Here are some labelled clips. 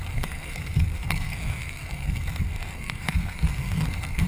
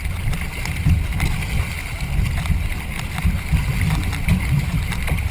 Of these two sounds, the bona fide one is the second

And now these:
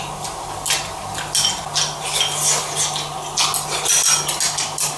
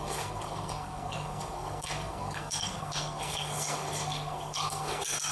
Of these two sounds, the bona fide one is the first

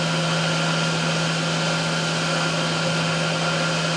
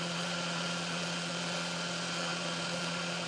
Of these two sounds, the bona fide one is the first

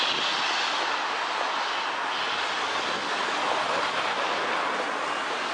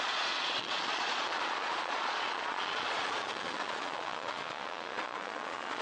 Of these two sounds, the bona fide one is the first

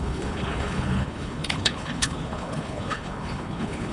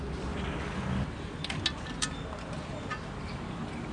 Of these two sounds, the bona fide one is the second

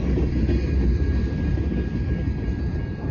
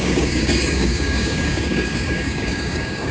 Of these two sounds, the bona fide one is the first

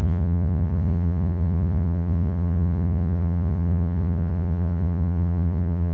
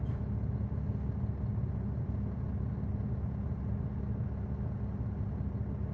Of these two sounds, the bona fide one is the second